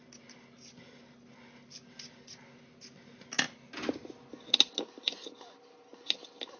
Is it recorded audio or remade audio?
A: recorded